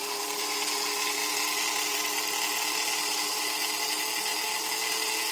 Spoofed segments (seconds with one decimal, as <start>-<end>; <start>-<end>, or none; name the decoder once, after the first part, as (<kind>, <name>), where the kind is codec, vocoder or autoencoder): none